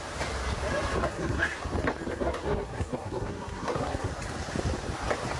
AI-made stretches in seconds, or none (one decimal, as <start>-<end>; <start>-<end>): 1.0-1.6; 2.1-4.1